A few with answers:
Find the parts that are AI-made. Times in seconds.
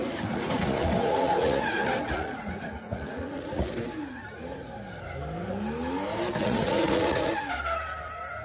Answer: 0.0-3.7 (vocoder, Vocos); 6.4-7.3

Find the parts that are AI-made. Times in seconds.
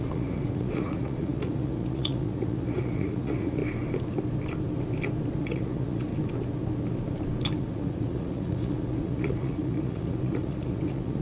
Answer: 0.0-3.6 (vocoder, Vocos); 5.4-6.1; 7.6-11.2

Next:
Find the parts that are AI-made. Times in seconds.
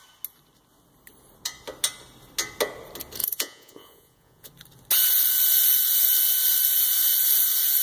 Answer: 3.2-4.5 (vocoder, Vocos)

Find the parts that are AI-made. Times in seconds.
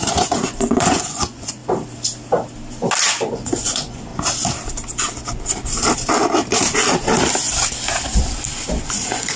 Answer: 0.0-1.6 (vocoder, Vocos); 3.3-4.1; 8.9-9.4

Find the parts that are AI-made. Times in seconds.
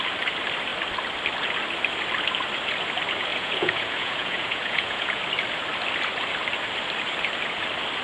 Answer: 3.3-5.2 (vocoder, Vocos)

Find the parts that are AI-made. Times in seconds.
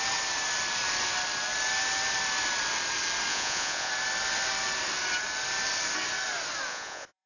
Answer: 3.3-3.9 (vocoder, Vocos); 6.7-7.3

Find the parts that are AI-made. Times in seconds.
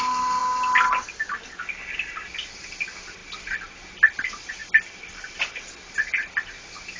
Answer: none